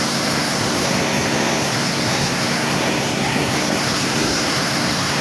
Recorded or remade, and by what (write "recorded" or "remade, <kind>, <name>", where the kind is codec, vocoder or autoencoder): remade, codec, SNAC